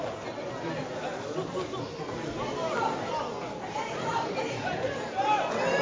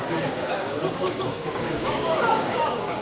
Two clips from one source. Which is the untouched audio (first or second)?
first